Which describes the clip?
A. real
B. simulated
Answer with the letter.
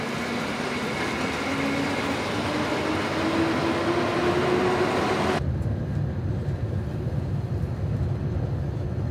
A